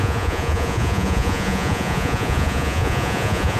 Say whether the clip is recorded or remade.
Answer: remade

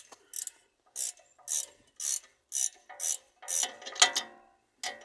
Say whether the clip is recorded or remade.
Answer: recorded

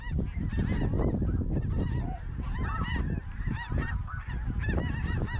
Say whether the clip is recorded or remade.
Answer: recorded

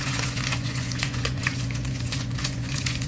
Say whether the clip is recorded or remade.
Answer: remade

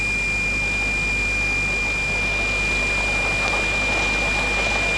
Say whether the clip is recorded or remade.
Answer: recorded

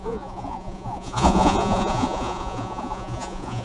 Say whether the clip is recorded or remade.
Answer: remade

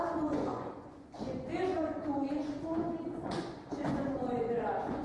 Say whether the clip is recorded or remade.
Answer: remade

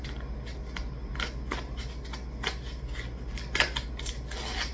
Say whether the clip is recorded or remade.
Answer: recorded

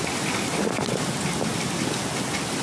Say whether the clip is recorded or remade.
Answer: recorded